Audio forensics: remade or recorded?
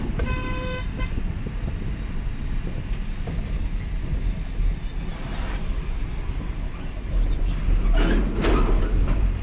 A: recorded